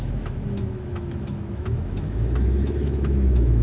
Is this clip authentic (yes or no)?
no